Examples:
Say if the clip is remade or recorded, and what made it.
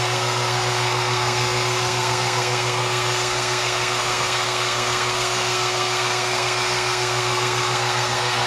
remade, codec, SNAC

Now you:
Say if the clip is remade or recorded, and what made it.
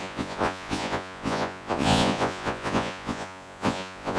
remade, vocoder, Vocos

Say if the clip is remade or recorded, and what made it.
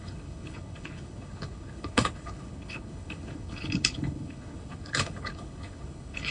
remade, codec, HILCodec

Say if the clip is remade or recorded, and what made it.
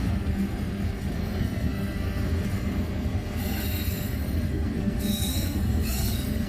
remade, codec, SNAC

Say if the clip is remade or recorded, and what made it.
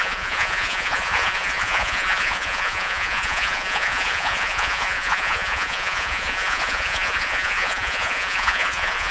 remade, vocoder, Vocos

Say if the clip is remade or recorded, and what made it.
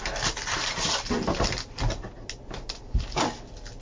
recorded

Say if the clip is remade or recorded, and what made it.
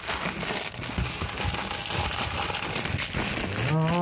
recorded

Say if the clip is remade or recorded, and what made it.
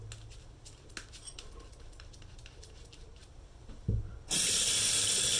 recorded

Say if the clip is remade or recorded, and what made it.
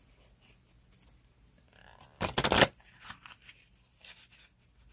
recorded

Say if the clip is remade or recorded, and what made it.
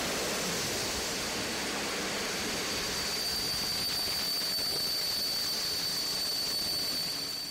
recorded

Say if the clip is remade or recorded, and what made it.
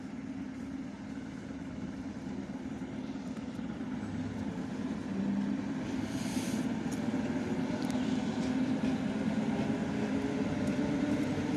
recorded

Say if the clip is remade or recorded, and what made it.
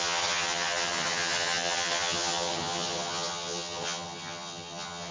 remade, vocoder, HiFi-GAN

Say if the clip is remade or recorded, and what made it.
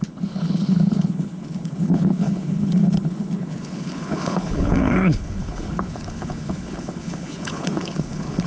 remade, codec, HILCodec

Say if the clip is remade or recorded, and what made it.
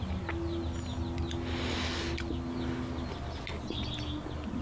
recorded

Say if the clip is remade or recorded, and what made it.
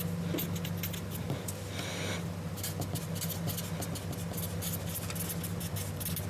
recorded